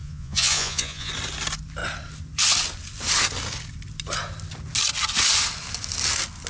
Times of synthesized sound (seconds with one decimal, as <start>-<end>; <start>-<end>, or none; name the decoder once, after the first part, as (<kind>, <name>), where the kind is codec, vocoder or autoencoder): 0.0-1.1 (vocoder, Vocos)